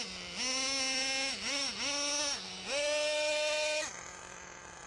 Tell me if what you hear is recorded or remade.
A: recorded